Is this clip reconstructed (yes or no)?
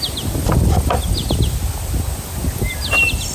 no